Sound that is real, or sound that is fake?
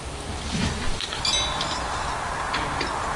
real